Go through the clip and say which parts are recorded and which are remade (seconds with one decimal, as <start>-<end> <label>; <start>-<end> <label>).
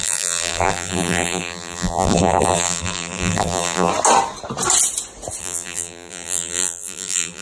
0.0-3.9 remade; 3.9-5.4 recorded; 5.4-7.4 remade